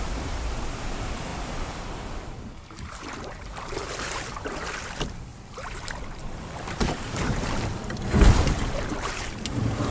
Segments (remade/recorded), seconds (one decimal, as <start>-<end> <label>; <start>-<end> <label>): 0.0-7.8 remade; 7.8-8.3 recorded; 8.3-9.9 remade

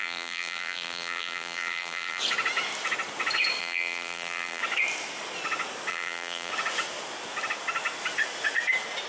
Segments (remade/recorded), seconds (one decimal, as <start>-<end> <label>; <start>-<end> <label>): 0.0-2.2 remade; 2.2-3.6 recorded; 3.6-4.6 remade; 4.6-5.9 recorded; 5.9-6.5 remade; 6.5-9.1 recorded